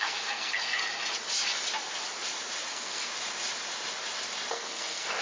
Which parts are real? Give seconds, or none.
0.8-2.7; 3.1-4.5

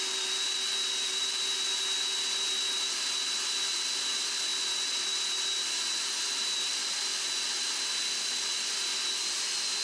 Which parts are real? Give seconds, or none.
0.0-9.8

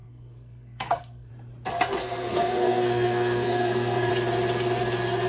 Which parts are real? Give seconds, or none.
1.3-2.0; 4.1-5.3

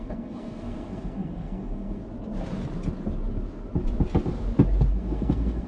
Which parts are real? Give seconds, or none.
2.0-4.9

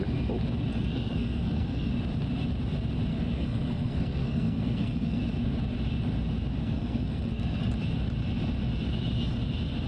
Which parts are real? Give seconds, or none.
0.0-0.7; 1.9-3.1; 5.2-6.6; 7.7-9.9